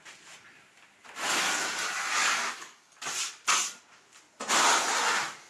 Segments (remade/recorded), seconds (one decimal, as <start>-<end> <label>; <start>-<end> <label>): 0.0-2.2 recorded; 2.2-3.1 remade; 3.1-5.5 recorded